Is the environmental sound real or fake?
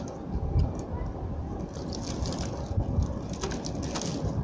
real